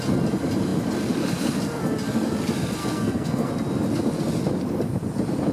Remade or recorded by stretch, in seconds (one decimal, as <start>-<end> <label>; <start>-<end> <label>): 0.0-2.8 recorded; 2.8-3.5 remade; 3.5-5.5 recorded